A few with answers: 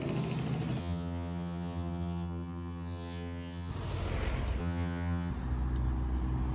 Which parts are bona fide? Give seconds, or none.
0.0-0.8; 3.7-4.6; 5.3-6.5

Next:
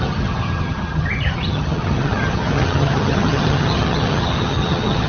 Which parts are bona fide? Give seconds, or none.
none

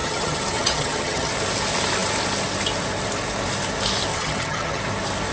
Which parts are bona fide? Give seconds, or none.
1.3-4.1; 4.8-5.3